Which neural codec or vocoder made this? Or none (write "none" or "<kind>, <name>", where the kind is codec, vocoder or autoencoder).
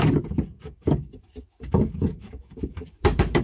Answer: codec, DAC